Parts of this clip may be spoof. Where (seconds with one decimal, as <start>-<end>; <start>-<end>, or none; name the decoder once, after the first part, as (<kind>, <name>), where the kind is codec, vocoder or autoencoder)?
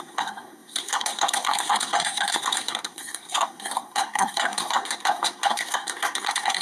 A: 0.0-6.6 (codec, SNAC)